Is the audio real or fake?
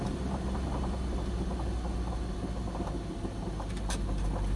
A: real